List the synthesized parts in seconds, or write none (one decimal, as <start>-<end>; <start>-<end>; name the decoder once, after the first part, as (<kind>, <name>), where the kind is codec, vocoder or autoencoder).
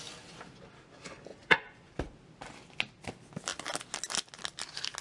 1.3-1.9 (vocoder, Vocos)